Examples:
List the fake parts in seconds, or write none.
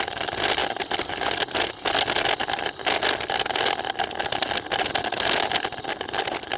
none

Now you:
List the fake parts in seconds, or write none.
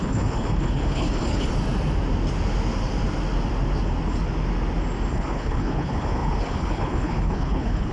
0.0-1.5 (codec, HILCodec); 5.1-7.9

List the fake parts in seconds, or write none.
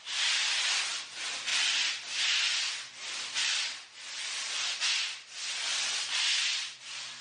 1.5-2.2 (vocoder, BigVGAN v2); 3.0-3.7